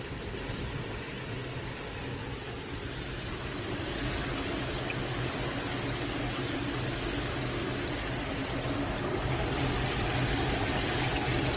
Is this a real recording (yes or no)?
yes